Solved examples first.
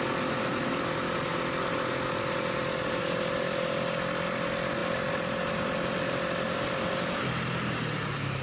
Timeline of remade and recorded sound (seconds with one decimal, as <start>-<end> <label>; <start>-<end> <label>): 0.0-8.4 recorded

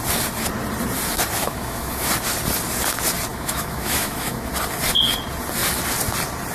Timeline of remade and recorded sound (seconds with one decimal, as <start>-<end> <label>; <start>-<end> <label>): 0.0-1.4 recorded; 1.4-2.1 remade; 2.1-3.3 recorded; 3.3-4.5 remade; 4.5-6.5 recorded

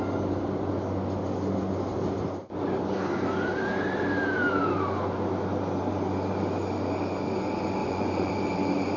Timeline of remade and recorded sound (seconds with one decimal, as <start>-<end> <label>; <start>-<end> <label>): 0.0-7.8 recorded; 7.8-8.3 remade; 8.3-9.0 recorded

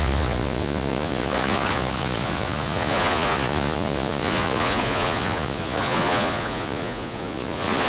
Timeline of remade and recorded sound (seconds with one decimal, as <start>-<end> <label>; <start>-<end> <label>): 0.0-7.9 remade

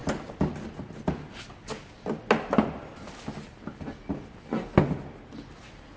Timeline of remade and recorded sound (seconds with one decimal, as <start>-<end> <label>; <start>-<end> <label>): 0.0-6.0 recorded

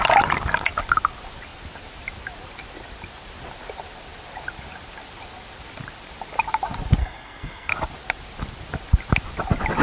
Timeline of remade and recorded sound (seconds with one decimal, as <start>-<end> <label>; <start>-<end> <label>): 0.0-7.0 recorded; 7.0-7.7 remade; 7.7-9.8 recorded

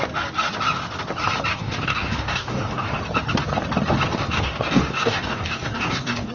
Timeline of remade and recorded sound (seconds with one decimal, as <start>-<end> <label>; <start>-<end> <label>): 0.0-1.5 recorded; 1.5-3.0 remade; 3.0-4.1 recorded; 4.1-6.3 remade

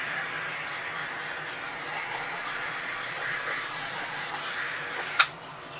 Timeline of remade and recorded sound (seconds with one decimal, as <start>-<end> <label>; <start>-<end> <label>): 0.0-2.0 recorded; 2.0-4.3 remade; 4.3-5.8 recorded